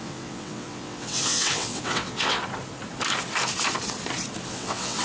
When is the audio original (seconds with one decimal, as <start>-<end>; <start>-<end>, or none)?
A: 2.4-4.5